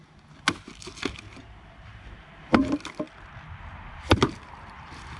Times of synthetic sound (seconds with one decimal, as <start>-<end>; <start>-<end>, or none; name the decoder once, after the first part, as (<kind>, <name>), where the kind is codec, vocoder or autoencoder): 1.4-2.6 (vocoder, BigVGAN v2); 3.6-5.2